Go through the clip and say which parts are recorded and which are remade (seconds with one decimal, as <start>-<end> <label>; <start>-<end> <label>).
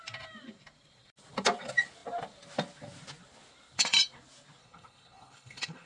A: 0.0-4.6 recorded; 4.6-5.9 remade